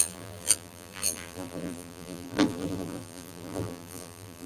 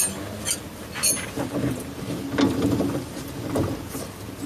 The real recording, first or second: second